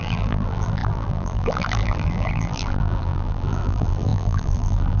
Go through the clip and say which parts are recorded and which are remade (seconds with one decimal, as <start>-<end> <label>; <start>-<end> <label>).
0.0-5.0 remade